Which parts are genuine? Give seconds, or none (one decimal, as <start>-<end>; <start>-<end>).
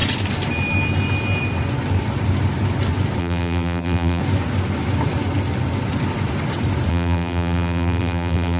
0.0-3.2; 4.2-6.9